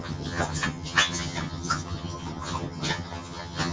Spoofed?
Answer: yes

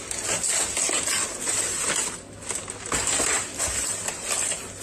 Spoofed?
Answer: no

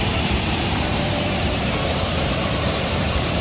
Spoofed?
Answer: yes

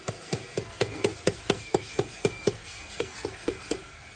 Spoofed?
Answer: yes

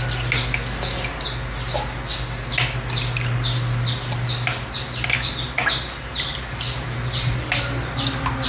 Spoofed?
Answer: no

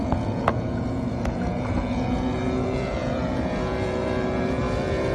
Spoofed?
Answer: yes